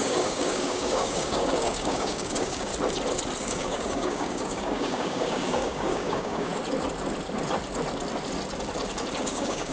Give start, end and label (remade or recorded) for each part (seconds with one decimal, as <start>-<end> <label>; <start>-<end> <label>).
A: 0.0-2.7 remade; 2.7-3.4 recorded; 3.4-6.5 remade; 6.5-9.2 recorded; 9.2-9.7 remade

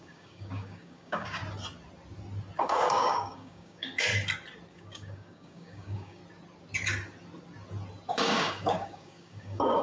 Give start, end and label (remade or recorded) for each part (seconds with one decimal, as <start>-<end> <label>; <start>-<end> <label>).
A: 0.0-1.4 remade; 1.4-2.6 recorded; 2.6-4.1 remade; 4.1-4.7 recorded; 4.7-6.2 remade; 6.2-8.1 recorded; 8.1-9.8 remade

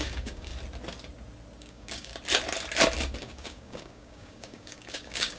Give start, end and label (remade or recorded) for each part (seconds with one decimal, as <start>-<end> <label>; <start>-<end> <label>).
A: 0.0-0.5 remade; 0.5-1.6 recorded; 1.6-2.1 remade; 2.1-3.2 recorded; 3.2-5.4 remade

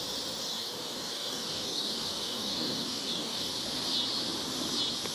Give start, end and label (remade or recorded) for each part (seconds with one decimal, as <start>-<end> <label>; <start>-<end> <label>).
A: 0.0-0.4 recorded; 0.4-3.5 remade; 3.5-5.1 recorded

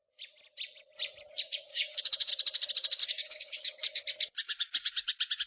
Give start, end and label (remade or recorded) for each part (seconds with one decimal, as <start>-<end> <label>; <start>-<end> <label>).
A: 0.0-1.7 recorded; 1.7-2.3 remade; 2.3-3.0 recorded; 3.0-4.0 remade; 4.0-5.5 recorded

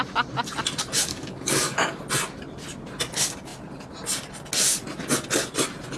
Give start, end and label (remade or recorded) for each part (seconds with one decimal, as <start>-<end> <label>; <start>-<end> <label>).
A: 0.0-1.1 recorded; 1.1-2.0 remade; 2.0-6.0 recorded

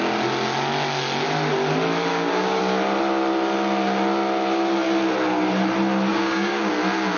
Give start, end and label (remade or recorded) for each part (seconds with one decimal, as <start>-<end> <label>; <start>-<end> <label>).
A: 0.0-2.1 recorded; 2.1-2.6 remade; 2.6-6.1 recorded; 6.1-6.7 remade; 6.7-7.2 recorded